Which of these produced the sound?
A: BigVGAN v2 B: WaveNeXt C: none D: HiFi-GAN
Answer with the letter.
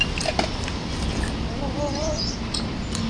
C